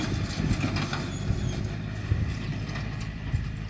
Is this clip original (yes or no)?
yes